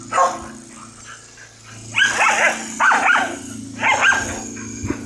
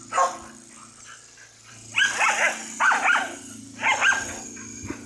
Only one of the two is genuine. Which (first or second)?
first